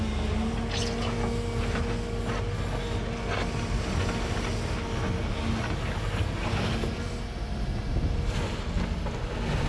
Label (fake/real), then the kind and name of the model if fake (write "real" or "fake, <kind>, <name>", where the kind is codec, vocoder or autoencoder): real